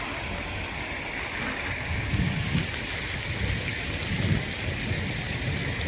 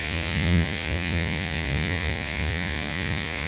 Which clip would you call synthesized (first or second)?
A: second